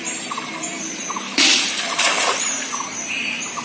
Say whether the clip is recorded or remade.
remade